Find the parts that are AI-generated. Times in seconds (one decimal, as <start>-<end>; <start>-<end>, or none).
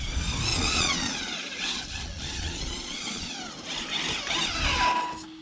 0.5-3.4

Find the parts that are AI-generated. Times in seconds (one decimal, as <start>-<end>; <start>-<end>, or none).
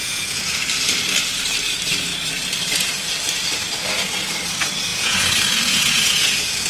0.0-0.6; 4.9-6.7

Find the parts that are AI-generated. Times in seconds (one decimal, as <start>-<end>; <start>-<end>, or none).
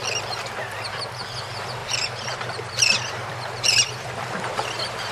1.8-3.9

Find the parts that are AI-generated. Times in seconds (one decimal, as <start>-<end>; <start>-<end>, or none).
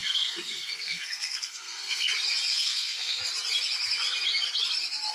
0.0-2.1; 2.5-3.2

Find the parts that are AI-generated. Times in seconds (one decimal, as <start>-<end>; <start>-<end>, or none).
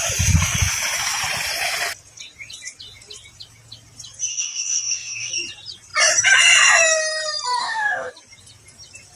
4.3-5.3; 7.6-8.1